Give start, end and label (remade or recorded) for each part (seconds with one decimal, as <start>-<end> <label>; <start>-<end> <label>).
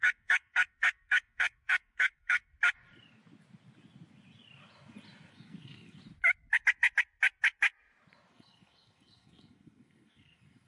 0.0-2.5 remade; 2.5-5.3 recorded; 5.3-6.0 remade; 6.0-8.3 recorded; 8.3-10.7 remade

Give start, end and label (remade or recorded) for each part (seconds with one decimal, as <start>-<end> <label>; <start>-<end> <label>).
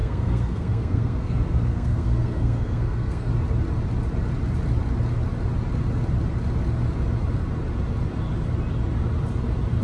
0.0-3.3 remade; 3.3-9.8 recorded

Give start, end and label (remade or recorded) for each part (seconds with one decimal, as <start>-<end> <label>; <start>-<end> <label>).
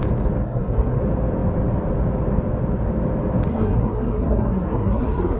0.0-0.4 recorded; 0.4-1.0 remade; 1.0-3.5 recorded; 3.5-5.4 remade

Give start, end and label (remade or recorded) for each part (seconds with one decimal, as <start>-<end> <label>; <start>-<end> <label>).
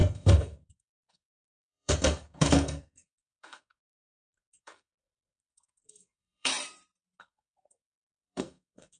0.0-6.5 remade; 6.5-7.2 recorded; 7.2-9.0 remade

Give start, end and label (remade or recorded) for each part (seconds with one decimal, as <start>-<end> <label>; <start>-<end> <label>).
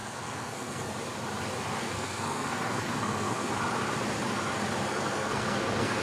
0.0-0.9 remade; 0.9-1.8 recorded; 1.8-3.5 remade; 3.5-4.9 recorded; 4.9-6.0 remade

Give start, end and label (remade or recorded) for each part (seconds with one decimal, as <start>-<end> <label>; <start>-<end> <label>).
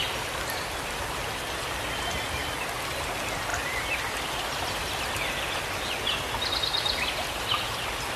0.0-8.2 recorded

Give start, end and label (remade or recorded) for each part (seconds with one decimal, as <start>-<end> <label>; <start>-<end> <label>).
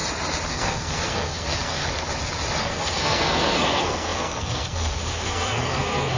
0.0-0.5 recorded; 0.5-1.9 remade; 1.9-2.6 recorded; 2.6-6.2 remade